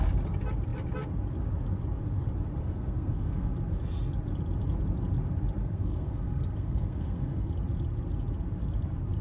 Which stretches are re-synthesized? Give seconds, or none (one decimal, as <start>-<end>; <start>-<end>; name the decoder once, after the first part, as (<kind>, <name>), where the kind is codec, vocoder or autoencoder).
2.6-3.5 (codec, SNAC); 5.6-7.5